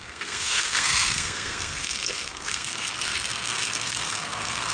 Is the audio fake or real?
fake